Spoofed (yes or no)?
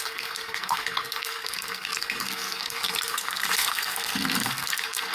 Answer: yes